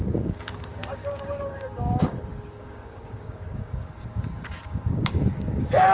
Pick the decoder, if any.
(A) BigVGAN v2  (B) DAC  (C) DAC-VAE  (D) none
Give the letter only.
B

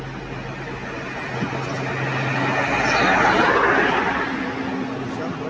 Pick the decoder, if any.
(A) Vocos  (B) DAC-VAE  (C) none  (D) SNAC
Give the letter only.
C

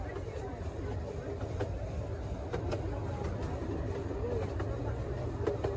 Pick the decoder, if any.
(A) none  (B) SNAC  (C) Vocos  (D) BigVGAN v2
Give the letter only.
A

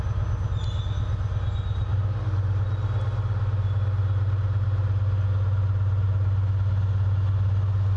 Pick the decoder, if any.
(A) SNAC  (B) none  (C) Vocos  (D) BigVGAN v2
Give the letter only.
B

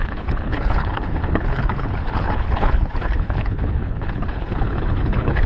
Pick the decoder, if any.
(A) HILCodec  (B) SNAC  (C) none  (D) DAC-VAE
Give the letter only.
A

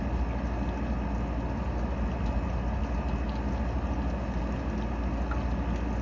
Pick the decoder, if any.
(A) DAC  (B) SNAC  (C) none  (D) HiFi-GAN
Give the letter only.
C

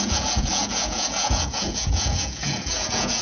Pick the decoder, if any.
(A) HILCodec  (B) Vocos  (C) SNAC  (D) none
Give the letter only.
B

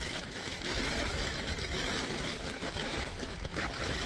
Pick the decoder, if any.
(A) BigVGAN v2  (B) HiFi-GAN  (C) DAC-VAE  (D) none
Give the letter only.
C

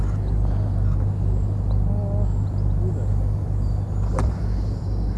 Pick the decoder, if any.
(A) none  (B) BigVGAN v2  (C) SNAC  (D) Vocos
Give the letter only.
A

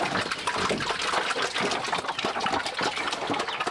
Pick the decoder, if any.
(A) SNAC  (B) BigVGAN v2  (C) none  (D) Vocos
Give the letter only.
C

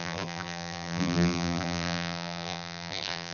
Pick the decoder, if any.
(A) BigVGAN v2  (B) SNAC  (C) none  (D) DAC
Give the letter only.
A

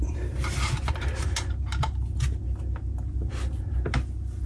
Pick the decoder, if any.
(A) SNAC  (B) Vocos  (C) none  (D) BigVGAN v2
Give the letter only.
C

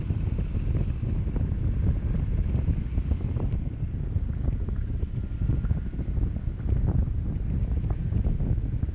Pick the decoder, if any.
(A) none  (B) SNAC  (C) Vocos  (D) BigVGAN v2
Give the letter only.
A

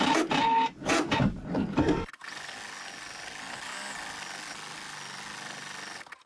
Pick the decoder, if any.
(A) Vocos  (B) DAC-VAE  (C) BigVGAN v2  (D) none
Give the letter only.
D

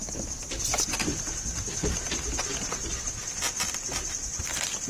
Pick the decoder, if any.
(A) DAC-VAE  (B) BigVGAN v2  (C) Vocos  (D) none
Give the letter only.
B